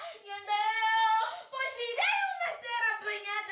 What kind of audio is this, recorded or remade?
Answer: recorded